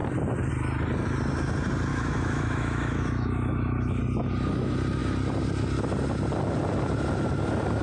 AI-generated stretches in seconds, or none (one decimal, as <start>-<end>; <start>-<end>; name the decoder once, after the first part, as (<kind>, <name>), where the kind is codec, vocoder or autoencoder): 1.9-4.0 (autoencoder, DAC-VAE)